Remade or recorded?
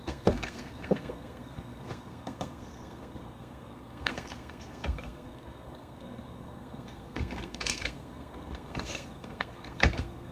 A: remade